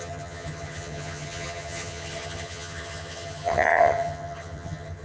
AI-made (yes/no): yes